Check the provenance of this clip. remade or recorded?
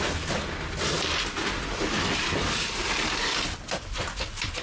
recorded